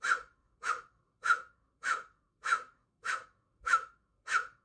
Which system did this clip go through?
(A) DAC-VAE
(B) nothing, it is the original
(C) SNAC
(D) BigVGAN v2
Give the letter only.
A